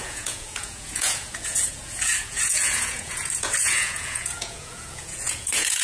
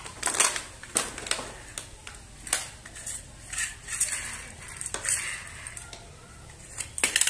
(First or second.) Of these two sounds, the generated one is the first